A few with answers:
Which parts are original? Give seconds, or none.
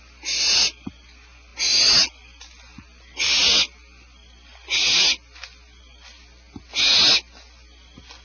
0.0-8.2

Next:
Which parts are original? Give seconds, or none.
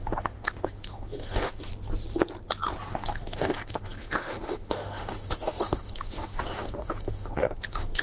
1.7-2.9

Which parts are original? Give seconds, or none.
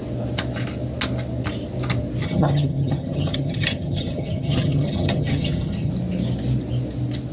0.0-2.2; 5.9-7.3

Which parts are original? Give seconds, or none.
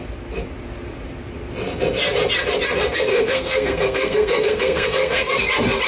0.0-3.1; 5.3-5.9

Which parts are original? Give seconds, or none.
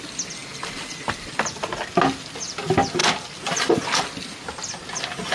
0.0-5.3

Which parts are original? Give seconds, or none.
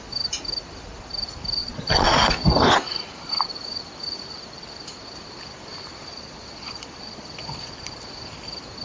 0.0-1.6; 2.1-6.1; 7.7-8.8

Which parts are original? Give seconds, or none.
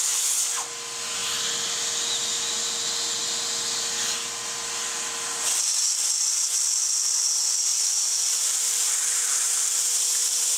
0.0-7.7; 10.0-10.6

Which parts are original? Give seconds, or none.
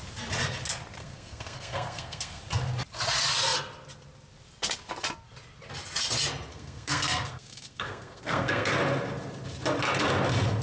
0.0-1.0; 2.4-6.5; 8.7-10.6